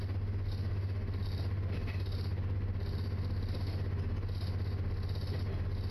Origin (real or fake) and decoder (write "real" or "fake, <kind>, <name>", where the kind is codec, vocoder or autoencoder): real